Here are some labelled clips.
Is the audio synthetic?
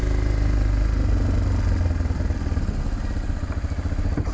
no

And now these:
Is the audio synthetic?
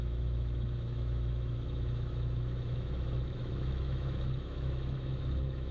yes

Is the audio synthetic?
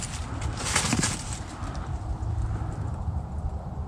no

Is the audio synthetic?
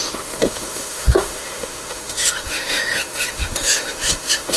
yes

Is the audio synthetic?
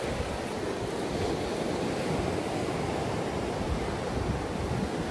no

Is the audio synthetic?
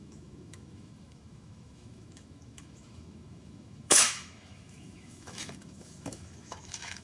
yes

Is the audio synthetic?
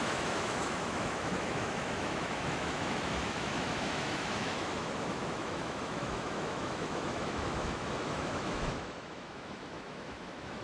yes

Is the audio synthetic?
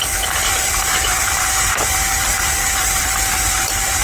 no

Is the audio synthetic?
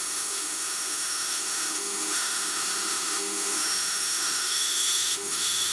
yes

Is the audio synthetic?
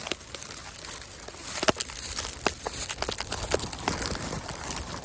no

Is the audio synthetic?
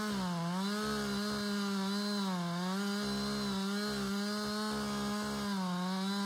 no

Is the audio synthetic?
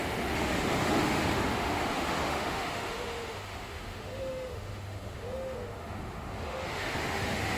yes